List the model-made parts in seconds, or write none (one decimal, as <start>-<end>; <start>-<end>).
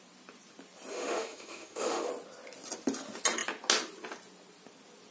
0.9-2.1